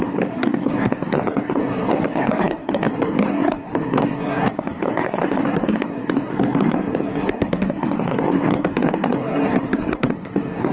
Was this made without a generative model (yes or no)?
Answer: no